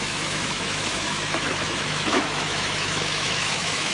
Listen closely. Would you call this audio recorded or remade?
remade